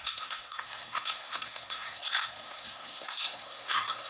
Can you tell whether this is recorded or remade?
remade